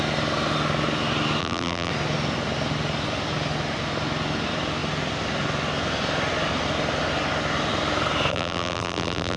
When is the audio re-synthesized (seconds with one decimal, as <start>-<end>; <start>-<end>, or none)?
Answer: 1.4-1.9; 8.3-9.4